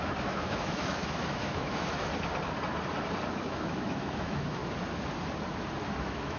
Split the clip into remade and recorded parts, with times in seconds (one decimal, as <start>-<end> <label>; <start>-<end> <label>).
0.0-2.1 remade; 2.1-3.3 recorded; 3.3-4.6 remade; 4.6-5.9 recorded; 5.9-6.4 remade